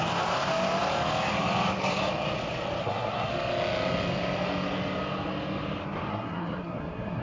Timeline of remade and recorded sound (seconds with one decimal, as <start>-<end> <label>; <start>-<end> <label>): 0.0-2.8 recorded; 2.8-3.3 remade; 3.3-6.1 recorded; 6.1-7.2 remade